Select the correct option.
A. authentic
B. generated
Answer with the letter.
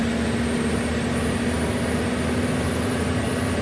A